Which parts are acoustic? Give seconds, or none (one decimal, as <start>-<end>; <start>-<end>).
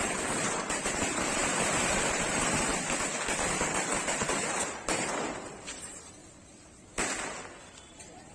1.4-2.1; 2.7-3.5; 6.2-7.9